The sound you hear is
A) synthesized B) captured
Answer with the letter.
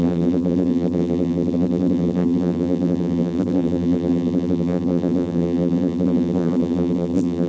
A